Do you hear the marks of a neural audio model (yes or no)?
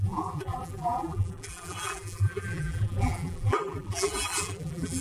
yes